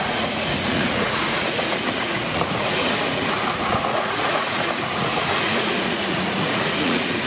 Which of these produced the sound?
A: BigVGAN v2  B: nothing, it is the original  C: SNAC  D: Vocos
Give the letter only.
D